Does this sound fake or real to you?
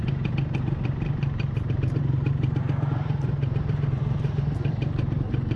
fake